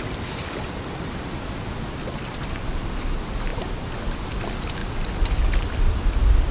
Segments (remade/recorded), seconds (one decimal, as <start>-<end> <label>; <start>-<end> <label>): 0.0-6.5 recorded